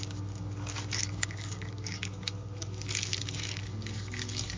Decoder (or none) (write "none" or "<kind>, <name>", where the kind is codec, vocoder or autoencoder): codec, DAC